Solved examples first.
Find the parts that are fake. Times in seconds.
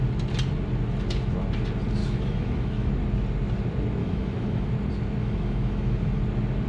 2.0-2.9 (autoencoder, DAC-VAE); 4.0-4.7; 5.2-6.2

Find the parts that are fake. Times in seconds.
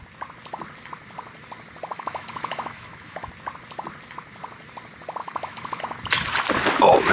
1.9-3.3 (autoencoder, DAC-VAE); 5.2-5.8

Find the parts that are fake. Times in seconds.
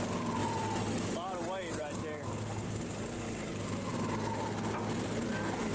none